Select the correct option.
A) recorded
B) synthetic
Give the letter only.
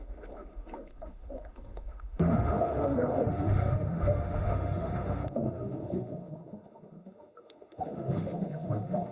B